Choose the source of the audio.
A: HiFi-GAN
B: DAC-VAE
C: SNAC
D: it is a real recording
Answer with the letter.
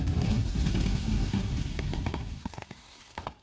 C